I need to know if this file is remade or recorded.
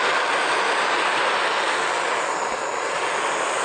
recorded